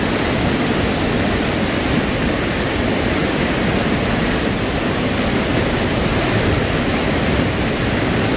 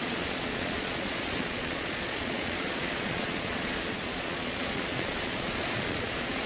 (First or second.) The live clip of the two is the first